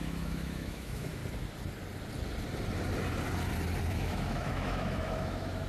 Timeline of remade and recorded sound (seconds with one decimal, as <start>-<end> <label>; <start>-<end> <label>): 0.0-1.2 remade; 1.2-3.9 recorded; 3.9-5.7 remade